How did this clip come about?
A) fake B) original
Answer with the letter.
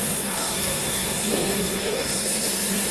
A